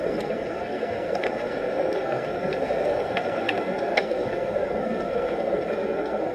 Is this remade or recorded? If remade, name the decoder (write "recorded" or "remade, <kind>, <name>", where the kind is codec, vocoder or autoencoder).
remade, codec, SNAC